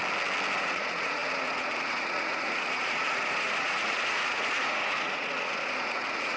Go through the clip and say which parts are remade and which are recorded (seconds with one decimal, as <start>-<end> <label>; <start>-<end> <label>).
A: 0.0-0.6 recorded; 0.6-6.4 remade